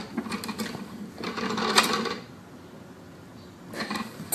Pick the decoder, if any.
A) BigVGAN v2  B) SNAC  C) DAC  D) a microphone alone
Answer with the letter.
D